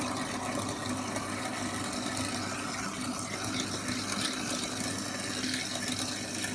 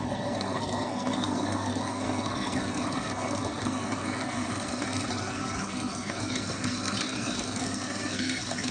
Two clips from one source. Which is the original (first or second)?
first